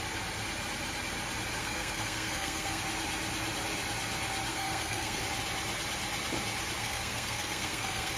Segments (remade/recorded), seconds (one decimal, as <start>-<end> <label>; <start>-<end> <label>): 0.0-1.6 recorded; 1.6-2.8 remade; 2.8-4.5 recorded; 4.5-5.2 remade; 5.2-6.8 recorded; 6.8-8.2 remade